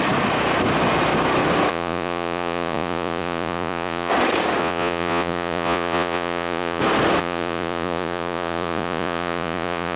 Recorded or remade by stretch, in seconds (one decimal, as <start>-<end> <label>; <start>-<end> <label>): 0.0-1.7 recorded; 1.7-4.1 remade; 4.1-4.6 recorded; 4.6-6.8 remade; 6.8-7.2 recorded; 7.2-10.0 remade